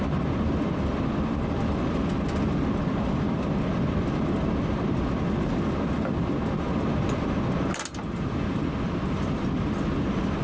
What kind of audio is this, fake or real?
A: real